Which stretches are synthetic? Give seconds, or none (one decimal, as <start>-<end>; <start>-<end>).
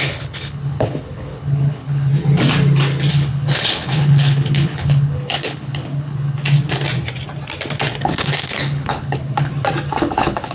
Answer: 0.0-2.1; 3.1-6.4; 8.0-9.5; 10.0-10.5